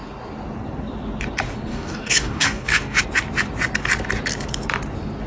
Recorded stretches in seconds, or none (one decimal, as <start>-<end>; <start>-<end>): 0.0-1.7; 3.0-5.3